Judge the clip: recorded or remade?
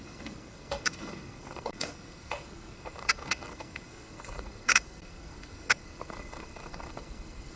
remade